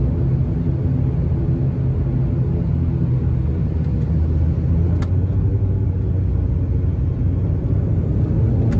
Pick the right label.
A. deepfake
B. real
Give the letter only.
B